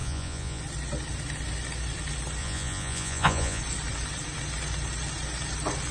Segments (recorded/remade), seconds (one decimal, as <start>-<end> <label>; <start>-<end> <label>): 0.0-0.6 remade; 0.6-2.4 recorded; 2.4-3.6 remade; 3.6-5.9 recorded